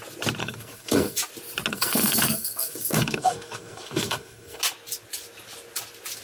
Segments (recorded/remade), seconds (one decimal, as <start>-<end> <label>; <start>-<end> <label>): 0.0-0.4 recorded; 0.4-1.2 remade; 1.2-1.7 recorded; 1.7-4.6 remade; 4.6-6.2 recorded